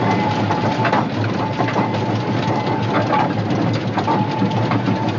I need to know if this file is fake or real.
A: real